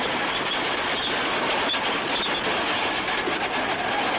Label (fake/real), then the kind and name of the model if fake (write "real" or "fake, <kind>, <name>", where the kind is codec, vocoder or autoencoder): real